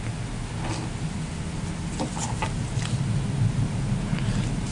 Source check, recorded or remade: recorded